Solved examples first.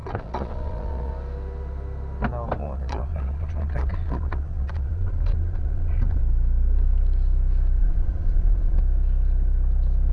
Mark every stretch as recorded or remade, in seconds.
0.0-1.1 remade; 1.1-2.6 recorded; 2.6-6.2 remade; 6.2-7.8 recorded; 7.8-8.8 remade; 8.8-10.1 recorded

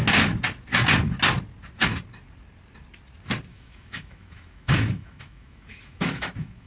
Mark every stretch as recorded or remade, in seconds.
0.0-3.5 recorded; 3.5-6.7 remade